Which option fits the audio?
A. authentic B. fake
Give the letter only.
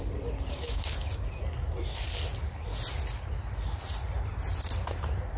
A